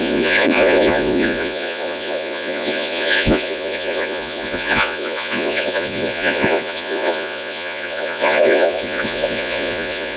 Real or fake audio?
fake